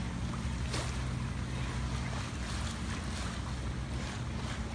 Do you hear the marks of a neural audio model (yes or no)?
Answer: no